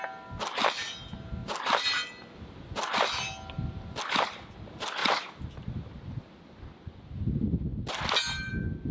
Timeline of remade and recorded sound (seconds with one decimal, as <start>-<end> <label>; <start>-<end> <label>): 0.0-8.9 recorded